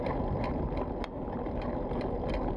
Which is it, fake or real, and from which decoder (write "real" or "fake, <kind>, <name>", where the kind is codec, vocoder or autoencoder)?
real